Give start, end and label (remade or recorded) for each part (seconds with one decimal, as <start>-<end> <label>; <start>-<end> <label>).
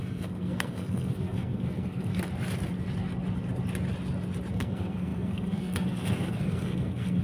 0.0-2.1 remade; 2.1-4.5 recorded; 4.5-7.2 remade